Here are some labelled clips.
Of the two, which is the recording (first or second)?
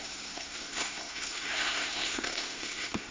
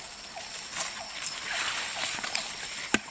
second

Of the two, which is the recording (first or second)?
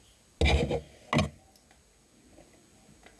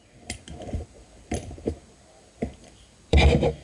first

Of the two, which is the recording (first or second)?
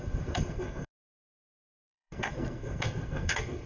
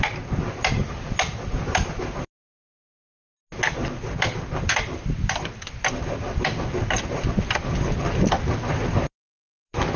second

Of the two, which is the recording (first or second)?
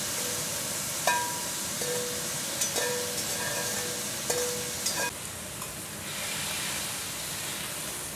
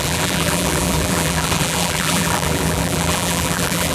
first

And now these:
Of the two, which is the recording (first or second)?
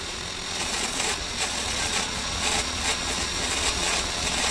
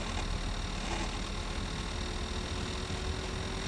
second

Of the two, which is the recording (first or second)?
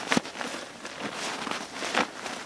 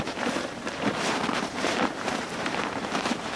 first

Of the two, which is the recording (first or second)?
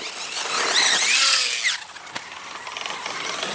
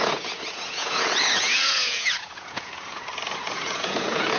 first